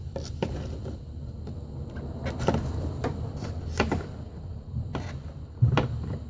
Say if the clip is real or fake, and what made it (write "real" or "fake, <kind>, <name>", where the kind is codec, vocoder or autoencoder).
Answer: real